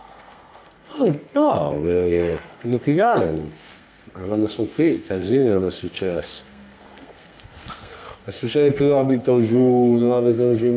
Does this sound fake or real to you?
fake